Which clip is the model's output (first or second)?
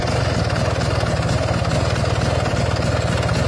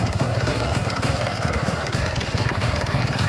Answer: second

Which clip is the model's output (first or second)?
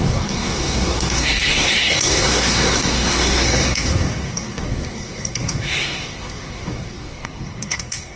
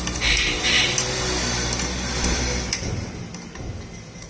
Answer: first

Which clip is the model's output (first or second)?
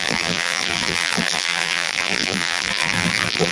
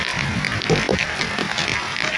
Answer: first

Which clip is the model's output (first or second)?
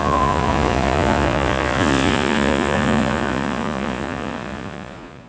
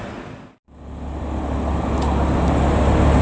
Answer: first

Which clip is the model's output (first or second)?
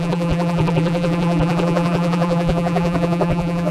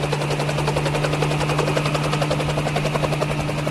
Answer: first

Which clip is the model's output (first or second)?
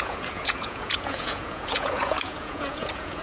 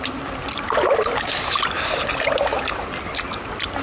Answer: first